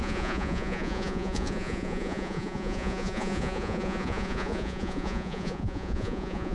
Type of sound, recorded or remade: remade